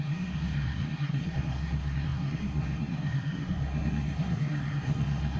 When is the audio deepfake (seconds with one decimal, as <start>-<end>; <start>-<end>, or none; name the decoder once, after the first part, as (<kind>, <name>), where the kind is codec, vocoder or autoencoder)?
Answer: 0.0-5.4 (codec, SNAC)